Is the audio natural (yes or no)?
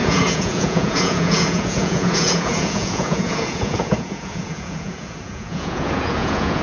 no